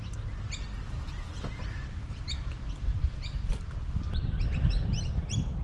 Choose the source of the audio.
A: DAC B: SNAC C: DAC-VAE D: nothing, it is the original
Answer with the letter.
D